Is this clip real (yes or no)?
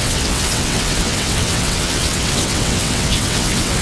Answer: no